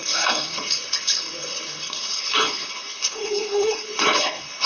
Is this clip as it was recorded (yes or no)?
no